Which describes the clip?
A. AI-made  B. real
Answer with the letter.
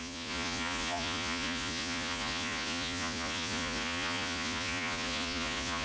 A